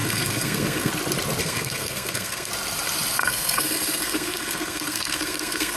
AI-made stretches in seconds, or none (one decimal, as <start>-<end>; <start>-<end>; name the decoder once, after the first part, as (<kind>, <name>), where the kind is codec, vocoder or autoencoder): 0.0-0.9 (codec, SNAC); 1.4-2.5; 3.2-5.8